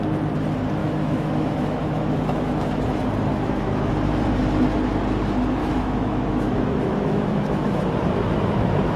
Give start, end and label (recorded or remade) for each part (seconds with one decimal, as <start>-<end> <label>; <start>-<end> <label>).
0.0-0.8 recorded; 0.8-2.7 remade; 2.7-3.3 recorded; 3.3-3.9 remade; 3.9-5.6 recorded; 5.6-7.8 remade; 7.8-9.0 recorded